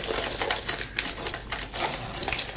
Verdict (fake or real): real